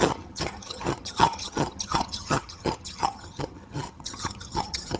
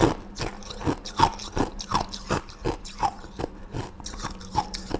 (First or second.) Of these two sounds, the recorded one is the second